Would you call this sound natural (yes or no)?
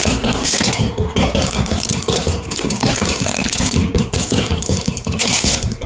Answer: no